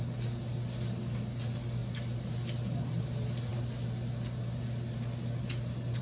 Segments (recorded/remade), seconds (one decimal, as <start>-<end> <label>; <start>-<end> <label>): 0.0-6.0 recorded